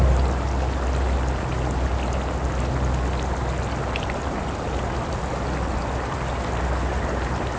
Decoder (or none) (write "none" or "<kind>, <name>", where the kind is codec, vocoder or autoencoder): none